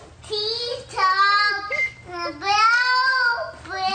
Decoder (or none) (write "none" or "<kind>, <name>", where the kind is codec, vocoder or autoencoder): none